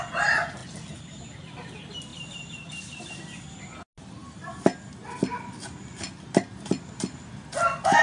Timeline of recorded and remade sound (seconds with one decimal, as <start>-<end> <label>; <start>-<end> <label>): 0.0-0.6 recorded; 0.6-1.2 remade; 1.2-2.1 recorded; 2.1-3.0 remade; 3.0-8.0 recorded